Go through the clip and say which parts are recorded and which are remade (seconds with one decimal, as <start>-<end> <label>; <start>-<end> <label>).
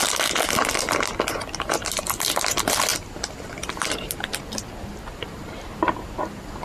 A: 0.0-6.6 recorded